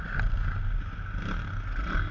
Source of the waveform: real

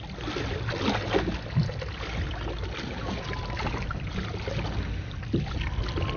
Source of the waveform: real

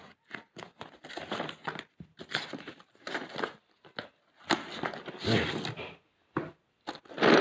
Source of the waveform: real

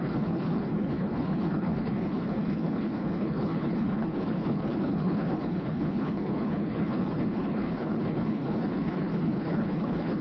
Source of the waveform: fake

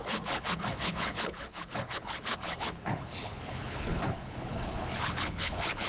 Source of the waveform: fake